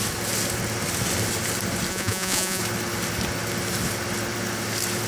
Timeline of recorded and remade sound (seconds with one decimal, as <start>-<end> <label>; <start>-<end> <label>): 0.0-1.9 recorded; 1.9-2.6 remade; 2.6-5.1 recorded